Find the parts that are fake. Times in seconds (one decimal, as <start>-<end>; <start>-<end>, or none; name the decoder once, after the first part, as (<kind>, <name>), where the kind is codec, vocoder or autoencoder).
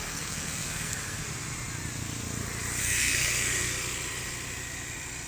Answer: 0.0-1.2 (codec, SNAC); 2.8-3.7